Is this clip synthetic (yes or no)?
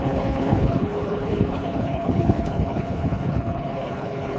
yes